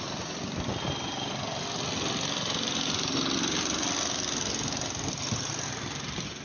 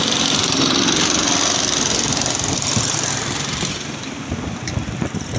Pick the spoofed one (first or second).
second